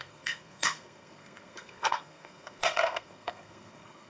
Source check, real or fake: fake